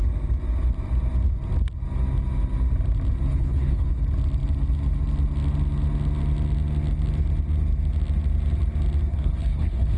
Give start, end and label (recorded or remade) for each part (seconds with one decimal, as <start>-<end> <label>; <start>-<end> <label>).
0.0-3.3 recorded; 3.3-4.0 remade; 4.0-9.1 recorded; 9.1-10.0 remade